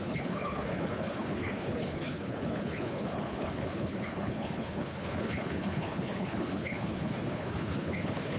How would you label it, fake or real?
fake